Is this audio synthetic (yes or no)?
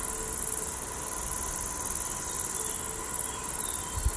no